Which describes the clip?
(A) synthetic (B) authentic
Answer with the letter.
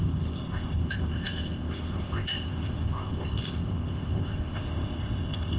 A